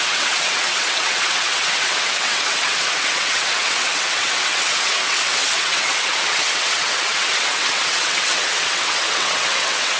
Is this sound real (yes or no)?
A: no